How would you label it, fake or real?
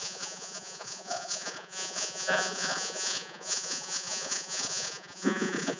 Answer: fake